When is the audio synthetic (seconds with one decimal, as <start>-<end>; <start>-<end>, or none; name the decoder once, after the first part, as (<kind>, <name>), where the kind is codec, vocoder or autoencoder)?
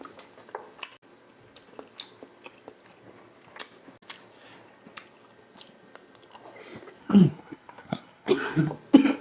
7.0-8.7 (codec, SNAC)